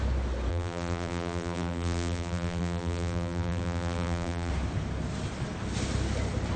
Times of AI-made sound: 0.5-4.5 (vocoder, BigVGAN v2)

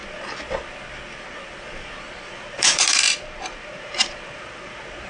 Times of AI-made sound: 2.3-5.1 (vocoder, BigVGAN v2)

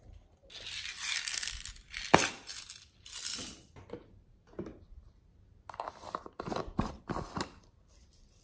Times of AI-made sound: 0.0-2.5 (vocoder, BigVGAN v2); 6.6-8.4

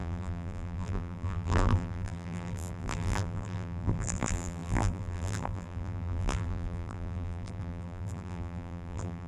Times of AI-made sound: 0.0-9.3 (vocoder, BigVGAN v2)

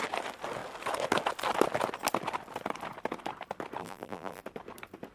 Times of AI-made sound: 3.8-4.4 (vocoder, BigVGAN v2)

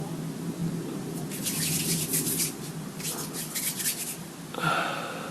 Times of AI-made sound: none